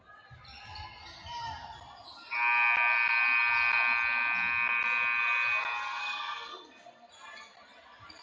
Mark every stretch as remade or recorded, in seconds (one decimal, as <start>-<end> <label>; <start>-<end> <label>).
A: 0.0-6.0 recorded; 6.0-7.1 remade; 7.1-8.2 recorded